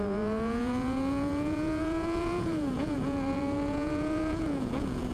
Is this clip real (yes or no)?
no